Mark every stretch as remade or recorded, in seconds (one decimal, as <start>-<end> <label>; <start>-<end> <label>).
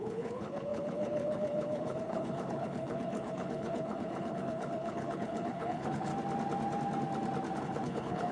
0.0-6.1 remade; 6.1-7.6 recorded; 7.6-8.3 remade